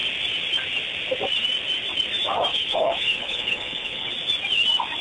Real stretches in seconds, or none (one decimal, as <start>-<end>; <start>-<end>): 0.0-2.5; 4.1-5.0